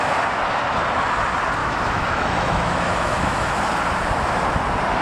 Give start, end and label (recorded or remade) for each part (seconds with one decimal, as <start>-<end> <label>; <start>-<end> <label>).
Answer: 0.0-1.6 recorded; 1.6-3.7 remade; 3.7-5.0 recorded